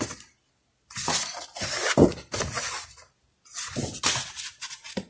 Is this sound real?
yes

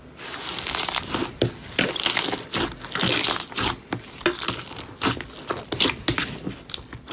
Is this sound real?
yes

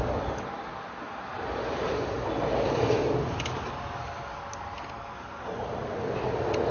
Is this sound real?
yes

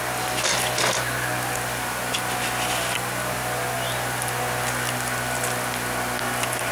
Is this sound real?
yes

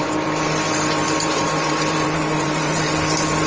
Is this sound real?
no